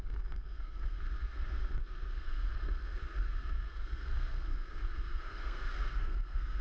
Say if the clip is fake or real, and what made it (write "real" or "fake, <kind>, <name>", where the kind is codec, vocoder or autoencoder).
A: fake, codec, SNAC